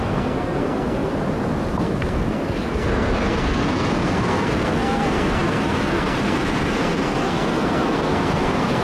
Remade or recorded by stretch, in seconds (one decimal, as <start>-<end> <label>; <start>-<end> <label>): 0.0-1.1 remade; 1.1-1.7 recorded; 1.7-8.8 remade